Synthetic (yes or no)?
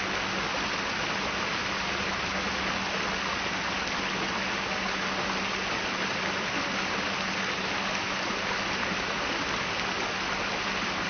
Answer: no